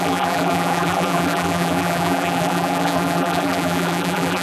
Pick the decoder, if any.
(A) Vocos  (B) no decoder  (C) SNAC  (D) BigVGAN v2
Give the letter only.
D